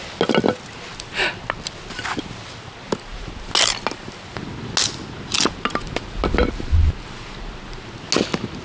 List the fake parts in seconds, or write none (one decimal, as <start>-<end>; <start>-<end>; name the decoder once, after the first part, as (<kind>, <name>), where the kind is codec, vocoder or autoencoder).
none